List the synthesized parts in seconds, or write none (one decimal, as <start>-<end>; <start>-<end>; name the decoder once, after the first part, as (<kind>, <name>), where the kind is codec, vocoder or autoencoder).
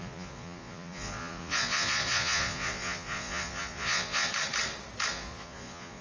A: 0.0-4.3 (vocoder, Vocos); 5.1-6.0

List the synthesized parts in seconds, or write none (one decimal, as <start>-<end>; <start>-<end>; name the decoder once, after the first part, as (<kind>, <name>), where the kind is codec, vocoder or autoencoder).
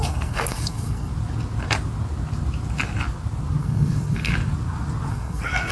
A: 0.0-1.1 (codec, SNAC); 3.6-4.3; 5.1-5.7